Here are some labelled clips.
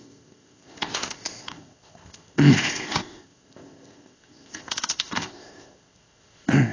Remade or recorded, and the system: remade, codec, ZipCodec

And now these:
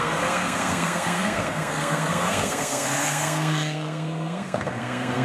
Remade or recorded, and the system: remade, codec, SNAC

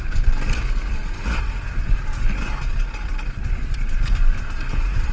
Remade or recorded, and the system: recorded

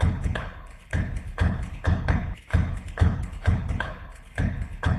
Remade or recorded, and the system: remade, codec, HILCodec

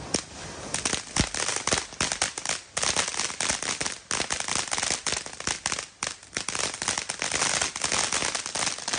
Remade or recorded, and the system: recorded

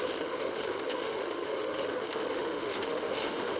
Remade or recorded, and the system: remade, autoencoder, DAC-VAE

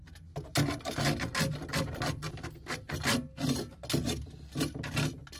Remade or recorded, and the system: recorded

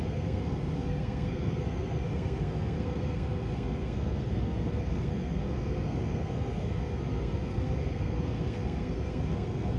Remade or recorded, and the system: remade, codec, SNAC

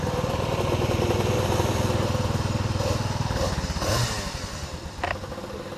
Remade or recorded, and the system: recorded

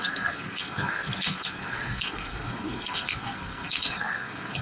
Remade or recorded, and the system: remade, codec, SNAC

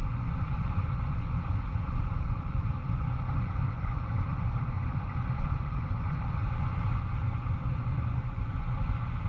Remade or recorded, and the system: remade, vocoder, Vocos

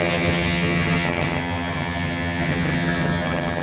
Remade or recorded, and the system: remade, vocoder, HiFi-GAN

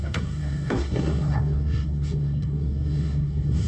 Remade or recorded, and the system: remade, codec, SNAC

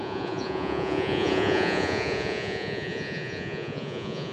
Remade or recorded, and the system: remade, vocoder, Vocos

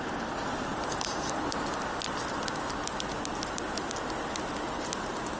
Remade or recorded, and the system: recorded